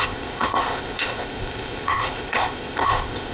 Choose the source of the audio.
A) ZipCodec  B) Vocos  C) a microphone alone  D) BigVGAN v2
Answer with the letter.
A